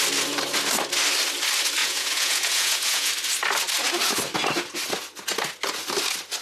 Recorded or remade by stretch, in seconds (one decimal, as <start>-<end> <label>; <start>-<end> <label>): 0.0-1.8 recorded; 1.8-3.1 remade; 3.1-6.4 recorded